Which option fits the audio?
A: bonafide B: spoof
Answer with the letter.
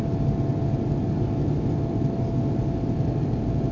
A